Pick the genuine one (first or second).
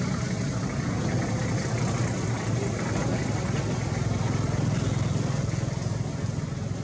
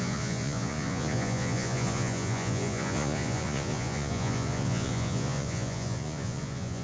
first